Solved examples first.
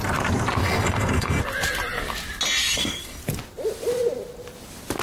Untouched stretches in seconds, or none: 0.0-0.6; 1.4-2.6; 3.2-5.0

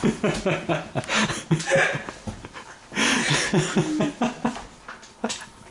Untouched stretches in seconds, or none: 0.0-5.7